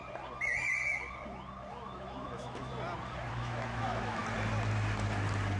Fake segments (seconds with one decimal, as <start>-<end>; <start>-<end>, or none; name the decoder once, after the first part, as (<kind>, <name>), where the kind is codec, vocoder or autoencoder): 1.7-2.7 (autoencoder, DAC-VAE); 3.3-4.2